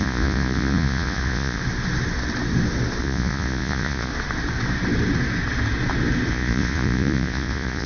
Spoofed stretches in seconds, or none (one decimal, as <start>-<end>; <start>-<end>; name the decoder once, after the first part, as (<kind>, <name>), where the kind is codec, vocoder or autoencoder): 0.0-1.6 (vocoder, Vocos); 3.0-4.1; 6.3-7.9